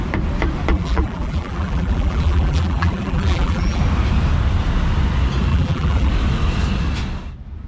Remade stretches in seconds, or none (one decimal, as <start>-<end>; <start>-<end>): 0.7-3.8; 5.5-6.1